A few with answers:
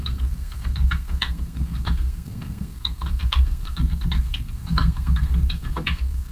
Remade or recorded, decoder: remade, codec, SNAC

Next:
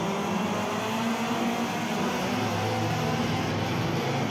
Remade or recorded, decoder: recorded